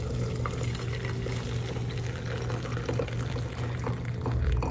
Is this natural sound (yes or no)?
yes